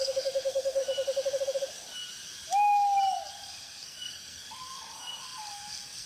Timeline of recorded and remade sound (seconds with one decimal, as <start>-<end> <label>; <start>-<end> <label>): 0.0-0.8 remade; 0.8-3.3 recorded; 3.3-6.1 remade